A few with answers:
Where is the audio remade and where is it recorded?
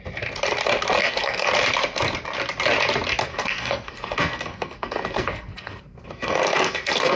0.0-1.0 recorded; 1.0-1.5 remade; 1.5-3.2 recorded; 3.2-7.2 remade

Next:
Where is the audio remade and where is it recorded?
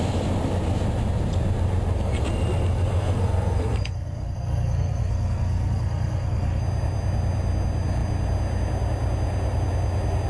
0.0-3.0 recorded; 3.0-6.6 remade; 6.6-10.3 recorded